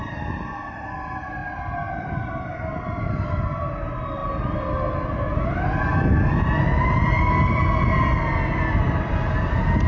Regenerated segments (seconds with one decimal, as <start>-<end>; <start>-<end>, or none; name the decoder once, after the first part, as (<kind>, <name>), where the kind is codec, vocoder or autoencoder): 1.4-2.3 (vocoder, BigVGAN v2)